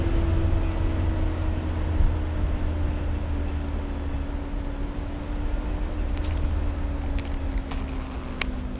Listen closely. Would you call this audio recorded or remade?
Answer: recorded